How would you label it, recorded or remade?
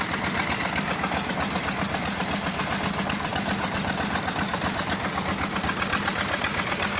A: recorded